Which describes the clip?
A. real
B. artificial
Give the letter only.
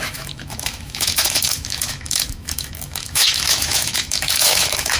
B